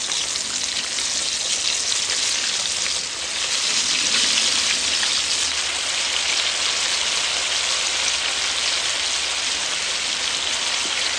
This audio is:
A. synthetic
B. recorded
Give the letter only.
B